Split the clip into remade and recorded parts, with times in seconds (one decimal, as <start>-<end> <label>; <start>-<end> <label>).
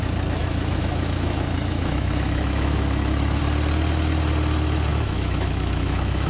0.0-0.4 recorded; 0.4-3.4 remade; 3.4-4.9 recorded; 4.9-6.3 remade